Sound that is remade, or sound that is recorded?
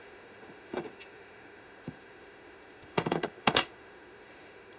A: remade